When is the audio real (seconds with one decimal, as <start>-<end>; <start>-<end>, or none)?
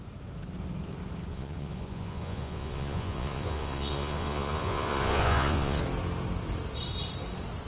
0.0-1.3; 5.8-7.7